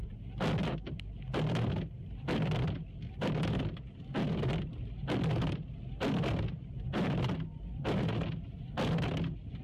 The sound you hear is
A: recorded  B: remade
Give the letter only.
A